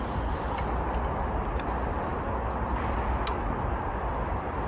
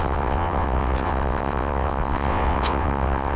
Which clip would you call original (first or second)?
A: first